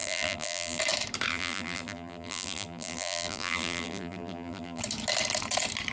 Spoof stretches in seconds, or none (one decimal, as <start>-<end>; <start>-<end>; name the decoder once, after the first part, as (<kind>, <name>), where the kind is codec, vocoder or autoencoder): 0.0-0.8 (vocoder, BigVGAN v2); 1.3-4.8